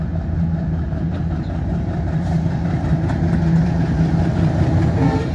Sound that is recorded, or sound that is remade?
remade